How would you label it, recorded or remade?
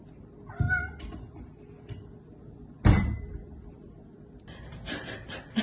recorded